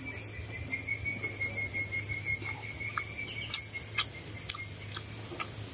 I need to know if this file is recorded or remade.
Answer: recorded